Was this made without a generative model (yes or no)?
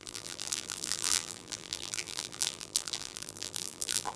no